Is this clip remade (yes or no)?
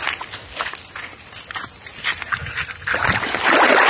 no